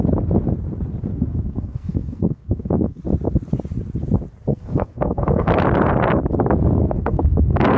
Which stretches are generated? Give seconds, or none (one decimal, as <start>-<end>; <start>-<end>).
1.1-3.0; 4.5-5.5; 6.8-7.8